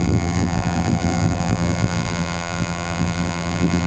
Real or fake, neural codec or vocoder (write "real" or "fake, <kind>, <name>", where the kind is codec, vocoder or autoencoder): fake, vocoder, BigVGAN v2